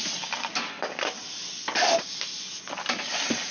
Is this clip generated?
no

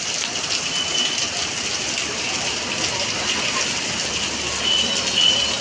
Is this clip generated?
no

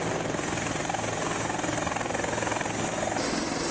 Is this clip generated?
no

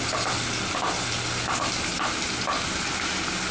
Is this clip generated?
no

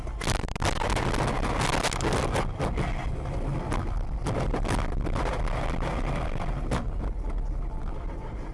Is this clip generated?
no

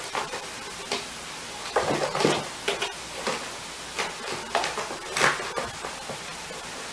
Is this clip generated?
no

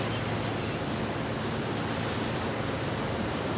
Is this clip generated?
no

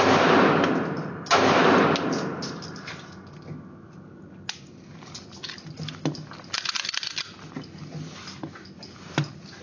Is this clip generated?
no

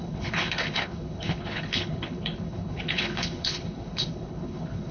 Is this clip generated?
yes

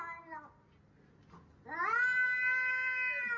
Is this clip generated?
no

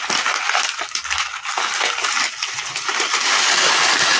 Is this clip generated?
no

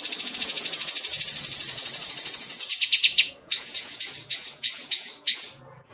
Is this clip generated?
yes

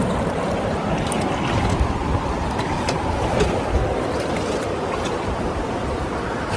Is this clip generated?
yes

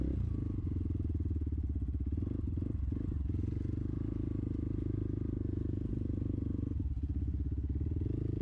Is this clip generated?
no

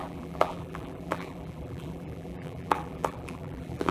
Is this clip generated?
yes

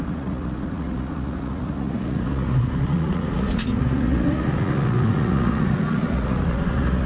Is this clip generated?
yes